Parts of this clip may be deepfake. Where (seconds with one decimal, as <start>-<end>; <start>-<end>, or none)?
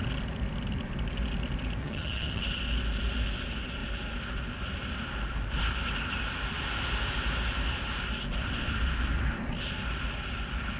1.8-2.4